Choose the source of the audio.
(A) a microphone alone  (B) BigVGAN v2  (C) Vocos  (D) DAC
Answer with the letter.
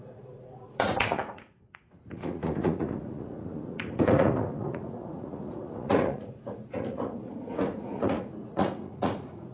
C